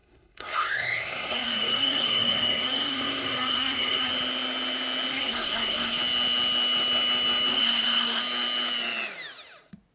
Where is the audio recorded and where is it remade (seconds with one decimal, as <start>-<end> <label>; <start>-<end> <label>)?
0.0-4.1 remade; 4.1-5.1 recorded; 5.1-6.0 remade; 6.0-7.5 recorded; 7.5-8.2 remade; 8.2-9.9 recorded